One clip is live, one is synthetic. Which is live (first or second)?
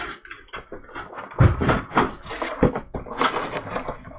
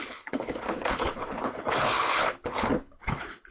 first